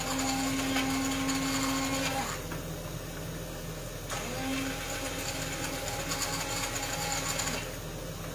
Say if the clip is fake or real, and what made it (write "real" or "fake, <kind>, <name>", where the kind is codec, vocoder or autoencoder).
real